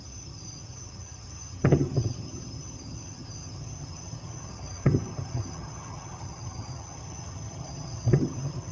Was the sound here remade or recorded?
remade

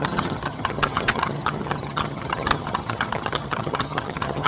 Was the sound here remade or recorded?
remade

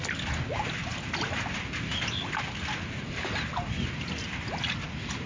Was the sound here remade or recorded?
recorded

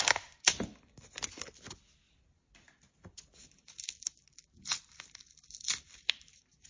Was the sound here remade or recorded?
recorded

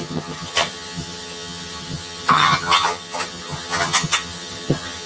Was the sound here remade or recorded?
remade